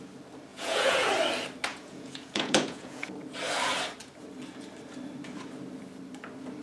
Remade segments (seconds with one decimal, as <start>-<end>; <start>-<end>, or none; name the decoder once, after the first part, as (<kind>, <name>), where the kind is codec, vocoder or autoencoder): 0.5-1.1 (vocoder, Vocos); 1.7-3.1